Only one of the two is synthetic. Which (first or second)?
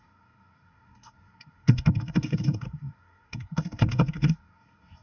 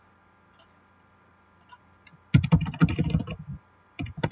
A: first